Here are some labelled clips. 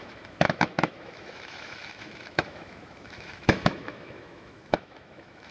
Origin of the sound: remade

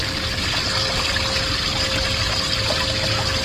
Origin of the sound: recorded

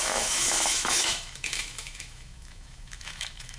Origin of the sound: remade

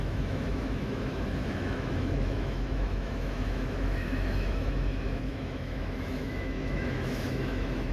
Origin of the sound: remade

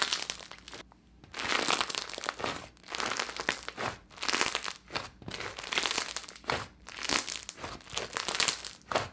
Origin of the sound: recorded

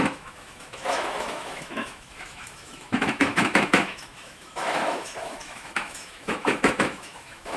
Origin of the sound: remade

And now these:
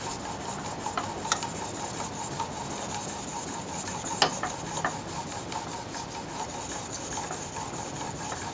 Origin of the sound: recorded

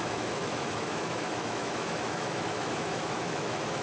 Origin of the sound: remade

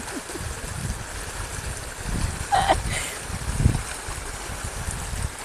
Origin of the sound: recorded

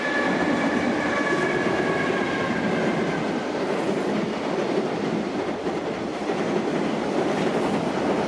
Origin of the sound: recorded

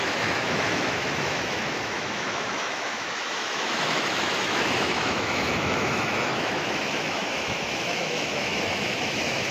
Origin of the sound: remade